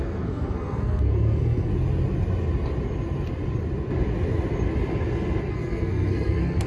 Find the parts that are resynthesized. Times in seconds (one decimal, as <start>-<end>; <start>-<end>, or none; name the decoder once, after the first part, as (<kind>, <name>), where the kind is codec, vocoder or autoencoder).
0.0-1.7 (codec, SNAC); 5.5-6.7